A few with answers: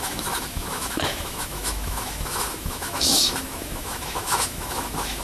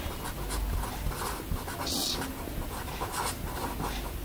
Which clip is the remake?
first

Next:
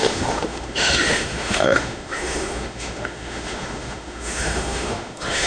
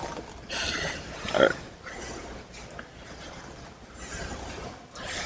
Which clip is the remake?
first